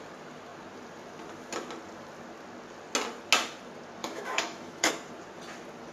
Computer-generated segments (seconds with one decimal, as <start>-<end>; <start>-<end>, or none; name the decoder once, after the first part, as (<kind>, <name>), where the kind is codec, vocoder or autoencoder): 4.0-4.9 (autoencoder, DAC-VAE)